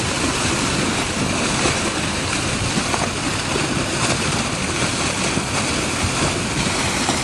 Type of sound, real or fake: real